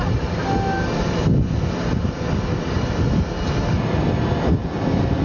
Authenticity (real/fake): real